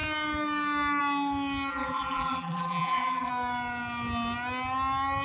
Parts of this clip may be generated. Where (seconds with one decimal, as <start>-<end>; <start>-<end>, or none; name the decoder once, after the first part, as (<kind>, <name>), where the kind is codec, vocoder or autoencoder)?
1.7-3.3 (vocoder, BigVGAN v2)